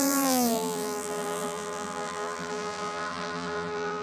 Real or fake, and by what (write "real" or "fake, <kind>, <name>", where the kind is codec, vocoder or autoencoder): fake, vocoder, BigVGAN v2